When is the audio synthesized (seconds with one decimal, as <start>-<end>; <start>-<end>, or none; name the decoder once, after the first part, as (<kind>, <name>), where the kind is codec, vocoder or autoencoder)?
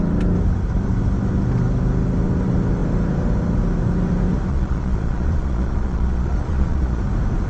4.5-7.0 (vocoder, Vocos)